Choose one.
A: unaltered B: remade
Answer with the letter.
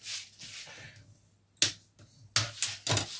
A